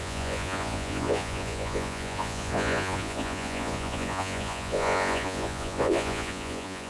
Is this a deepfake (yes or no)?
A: yes